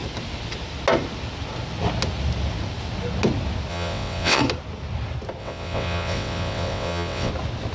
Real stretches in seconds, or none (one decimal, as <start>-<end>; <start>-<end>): 0.0-3.7; 4.4-5.4; 7.3-7.7